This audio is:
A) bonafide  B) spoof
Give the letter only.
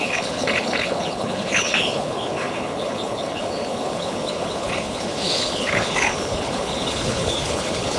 B